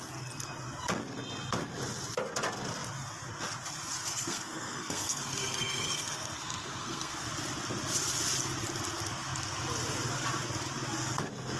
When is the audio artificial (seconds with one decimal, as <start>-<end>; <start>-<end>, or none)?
4.1-7.3